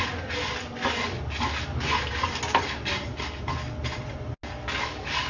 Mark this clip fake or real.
real